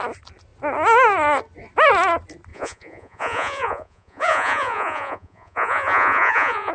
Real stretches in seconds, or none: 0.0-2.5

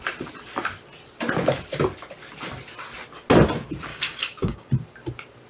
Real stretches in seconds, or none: 0.0-3.9; 4.7-5.5

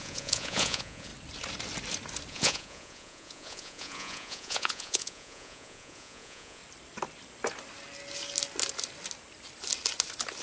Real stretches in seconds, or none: 1.1-2.3; 6.6-10.4

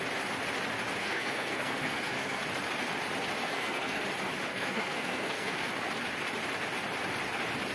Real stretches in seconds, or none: 0.0-1.0; 2.4-3.4; 4.0-4.5; 5.7-7.7

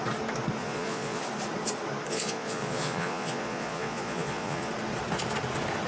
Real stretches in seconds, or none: 0.0-0.6; 1.2-2.1; 4.7-5.9

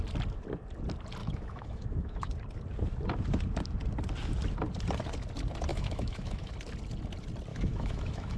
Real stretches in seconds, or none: 0.0-1.2; 2.3-5.7; 6.5-7.5

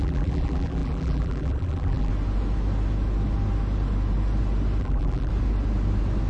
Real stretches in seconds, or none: 2.1-4.8; 5.3-6.3